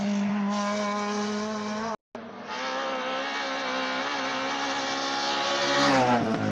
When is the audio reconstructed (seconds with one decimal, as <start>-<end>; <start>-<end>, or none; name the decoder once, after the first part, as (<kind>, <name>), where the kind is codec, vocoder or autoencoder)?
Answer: none